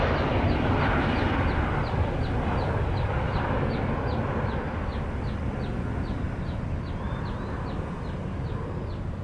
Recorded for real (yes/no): yes